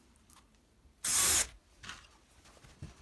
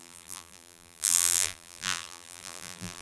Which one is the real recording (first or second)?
first